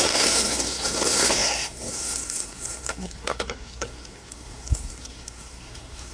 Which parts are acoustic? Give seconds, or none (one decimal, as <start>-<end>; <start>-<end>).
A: none